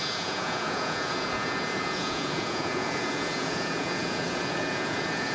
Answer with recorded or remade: remade